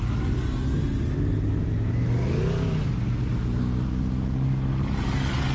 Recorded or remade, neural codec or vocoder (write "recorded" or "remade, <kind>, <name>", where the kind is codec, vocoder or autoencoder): recorded